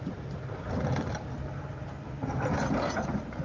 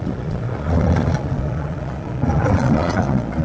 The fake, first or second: second